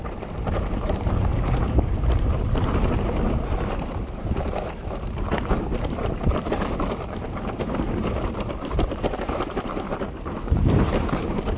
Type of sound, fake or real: fake